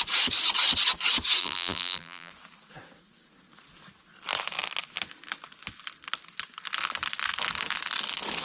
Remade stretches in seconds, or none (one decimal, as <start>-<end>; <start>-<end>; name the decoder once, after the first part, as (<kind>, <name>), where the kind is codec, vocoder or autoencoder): 1.4-2.3 (vocoder, BigVGAN v2)